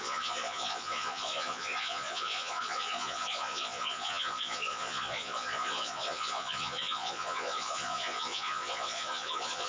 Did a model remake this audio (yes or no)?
yes